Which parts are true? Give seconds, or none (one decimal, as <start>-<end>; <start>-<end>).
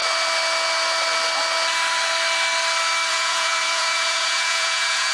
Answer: 0.0-3.1